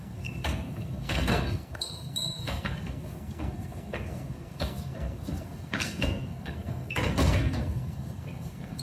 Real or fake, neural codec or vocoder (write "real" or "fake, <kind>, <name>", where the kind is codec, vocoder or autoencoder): fake, codec, SNAC